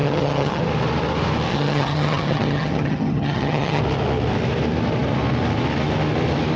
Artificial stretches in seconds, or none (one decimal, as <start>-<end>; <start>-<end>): 0.0-0.6; 1.5-3.8

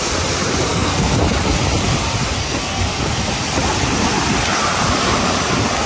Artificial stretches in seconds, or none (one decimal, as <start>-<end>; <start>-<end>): 0.7-1.2; 2.4-3.0

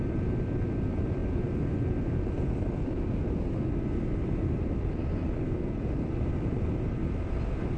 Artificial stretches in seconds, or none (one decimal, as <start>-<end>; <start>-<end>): none

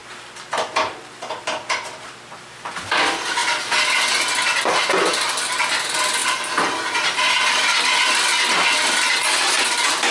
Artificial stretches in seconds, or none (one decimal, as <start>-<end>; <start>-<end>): none

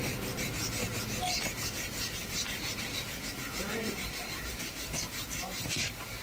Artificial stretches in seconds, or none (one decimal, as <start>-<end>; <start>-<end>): none

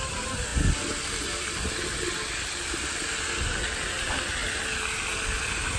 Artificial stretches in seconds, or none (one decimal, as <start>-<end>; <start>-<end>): none

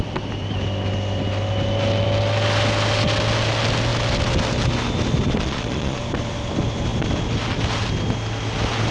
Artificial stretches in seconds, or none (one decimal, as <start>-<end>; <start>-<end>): 5.4-6.0

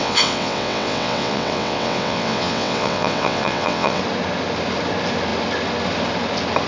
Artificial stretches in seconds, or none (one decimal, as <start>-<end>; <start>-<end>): 0.0-4.0